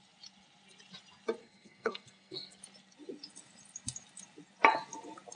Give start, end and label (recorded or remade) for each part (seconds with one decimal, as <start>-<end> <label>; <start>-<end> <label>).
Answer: 0.0-1.4 recorded; 1.4-2.6 remade; 2.6-5.4 recorded